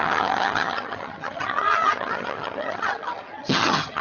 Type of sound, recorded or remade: remade